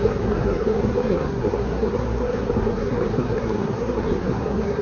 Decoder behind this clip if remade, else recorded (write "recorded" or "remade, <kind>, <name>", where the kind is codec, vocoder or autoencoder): remade, codec, SNAC